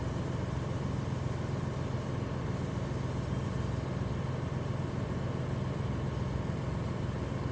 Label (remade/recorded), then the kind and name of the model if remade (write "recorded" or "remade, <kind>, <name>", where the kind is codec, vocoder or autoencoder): recorded